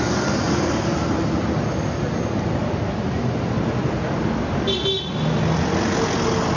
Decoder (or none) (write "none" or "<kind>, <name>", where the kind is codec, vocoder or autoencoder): none